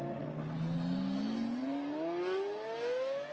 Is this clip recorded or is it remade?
recorded